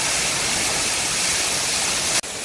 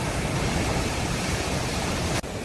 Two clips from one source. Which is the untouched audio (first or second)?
first